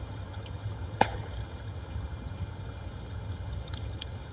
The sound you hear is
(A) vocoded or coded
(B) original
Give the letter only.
A